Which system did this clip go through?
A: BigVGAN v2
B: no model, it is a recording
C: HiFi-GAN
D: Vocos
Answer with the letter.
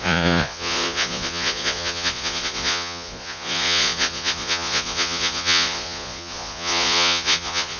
D